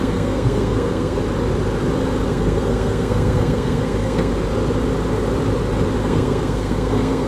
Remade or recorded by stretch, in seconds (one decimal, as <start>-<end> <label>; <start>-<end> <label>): 0.0-1.2 remade; 1.2-2.3 recorded; 2.3-4.3 remade; 4.3-6.0 recorded; 6.0-7.3 remade